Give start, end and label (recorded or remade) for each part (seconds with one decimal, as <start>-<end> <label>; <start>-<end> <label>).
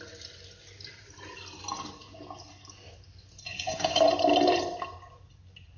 0.0-3.5 recorded; 3.5-4.0 remade; 4.0-5.8 recorded